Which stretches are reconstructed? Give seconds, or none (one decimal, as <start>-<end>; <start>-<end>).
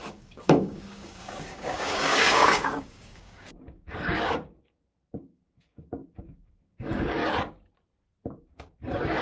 0.0-7.2; 8.3-9.2